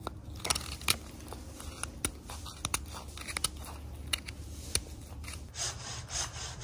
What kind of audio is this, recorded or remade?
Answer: recorded